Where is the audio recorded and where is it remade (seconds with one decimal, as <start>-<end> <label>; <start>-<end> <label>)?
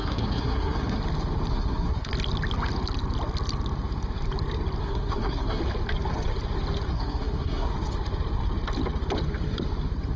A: 0.0-1.0 remade; 1.0-1.5 recorded; 1.5-2.1 remade; 2.1-4.8 recorded; 4.8-5.6 remade; 5.6-6.9 recorded; 6.9-7.7 remade; 7.7-10.2 recorded